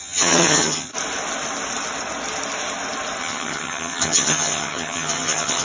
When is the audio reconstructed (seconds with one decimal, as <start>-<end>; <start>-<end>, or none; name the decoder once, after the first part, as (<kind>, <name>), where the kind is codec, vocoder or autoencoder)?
0.0-0.9 (vocoder, HiFi-GAN); 3.2-5.6